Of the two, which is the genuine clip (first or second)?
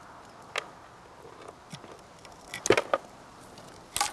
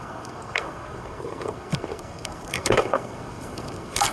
first